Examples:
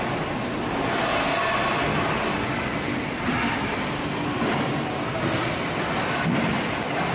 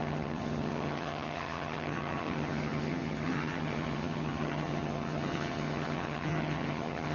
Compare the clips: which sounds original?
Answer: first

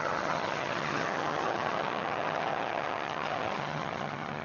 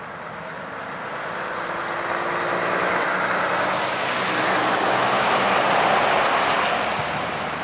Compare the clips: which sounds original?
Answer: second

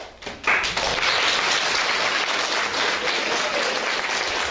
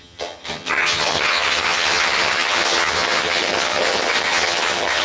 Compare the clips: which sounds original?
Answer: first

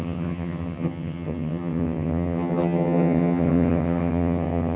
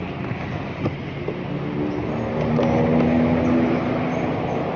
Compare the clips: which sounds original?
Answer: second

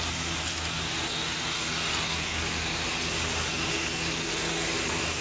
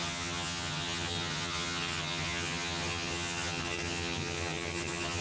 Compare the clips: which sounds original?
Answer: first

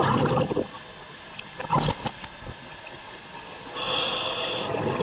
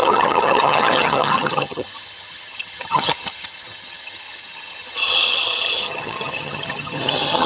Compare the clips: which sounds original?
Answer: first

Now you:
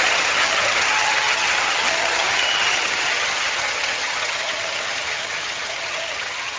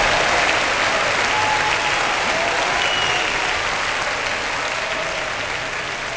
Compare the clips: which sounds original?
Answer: second